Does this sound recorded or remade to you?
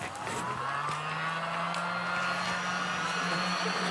recorded